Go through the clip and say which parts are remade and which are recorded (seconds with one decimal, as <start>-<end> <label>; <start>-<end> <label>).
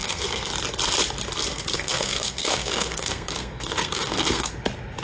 0.0-0.5 remade; 0.5-1.5 recorded; 1.5-4.5 remade; 4.5-5.0 recorded